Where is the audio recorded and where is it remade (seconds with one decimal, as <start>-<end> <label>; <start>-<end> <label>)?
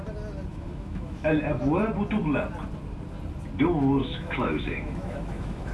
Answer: 0.0-0.5 recorded; 0.5-1.8 remade; 1.8-4.0 recorded; 4.0-5.7 remade